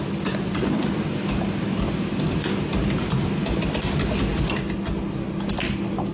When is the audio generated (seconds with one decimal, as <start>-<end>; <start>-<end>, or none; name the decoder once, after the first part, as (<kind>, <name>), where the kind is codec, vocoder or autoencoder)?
none